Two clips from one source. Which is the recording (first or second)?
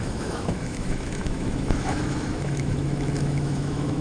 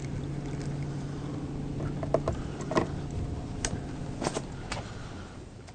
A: second